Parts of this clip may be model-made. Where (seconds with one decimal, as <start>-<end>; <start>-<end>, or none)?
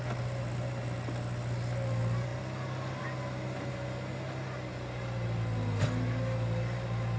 none